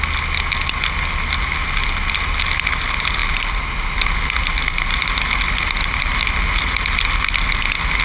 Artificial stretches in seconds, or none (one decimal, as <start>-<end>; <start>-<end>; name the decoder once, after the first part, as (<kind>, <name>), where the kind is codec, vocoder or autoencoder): none